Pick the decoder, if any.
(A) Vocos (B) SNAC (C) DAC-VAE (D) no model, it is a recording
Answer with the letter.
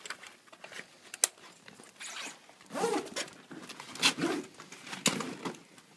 D